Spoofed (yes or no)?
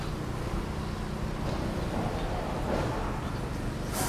no